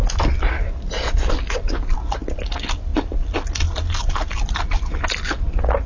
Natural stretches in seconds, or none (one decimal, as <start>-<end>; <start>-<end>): 0.0-5.9